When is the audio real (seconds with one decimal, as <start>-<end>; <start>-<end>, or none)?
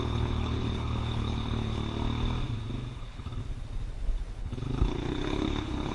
1.8-3.0; 3.4-4.4